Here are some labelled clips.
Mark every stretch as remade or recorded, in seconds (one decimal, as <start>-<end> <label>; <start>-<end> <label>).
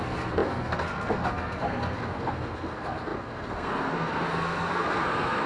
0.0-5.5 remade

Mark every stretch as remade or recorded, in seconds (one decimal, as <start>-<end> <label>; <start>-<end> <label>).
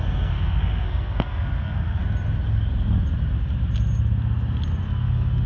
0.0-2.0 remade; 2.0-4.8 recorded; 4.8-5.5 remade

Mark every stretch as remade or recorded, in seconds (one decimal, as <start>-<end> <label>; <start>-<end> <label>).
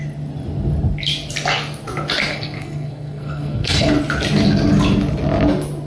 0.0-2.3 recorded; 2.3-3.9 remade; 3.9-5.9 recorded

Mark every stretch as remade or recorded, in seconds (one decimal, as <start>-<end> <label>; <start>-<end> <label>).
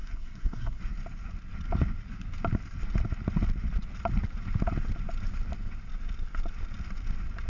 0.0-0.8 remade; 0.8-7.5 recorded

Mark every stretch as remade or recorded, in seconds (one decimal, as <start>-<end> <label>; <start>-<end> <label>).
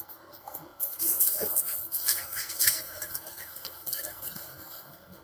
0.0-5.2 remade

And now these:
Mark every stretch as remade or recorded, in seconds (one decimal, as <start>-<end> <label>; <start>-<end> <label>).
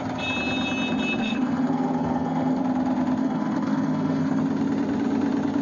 0.0-1.2 recorded; 1.2-2.6 remade; 2.6-3.2 recorded; 3.2-4.4 remade; 4.4-5.6 recorded